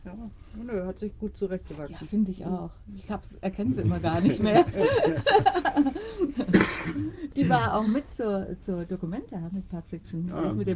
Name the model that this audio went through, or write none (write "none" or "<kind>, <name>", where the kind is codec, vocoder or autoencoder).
none